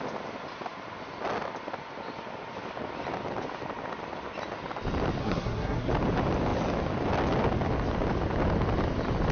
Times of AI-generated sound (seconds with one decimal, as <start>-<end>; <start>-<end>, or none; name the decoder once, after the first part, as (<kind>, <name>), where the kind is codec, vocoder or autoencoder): 5.2-5.9 (codec, SNAC)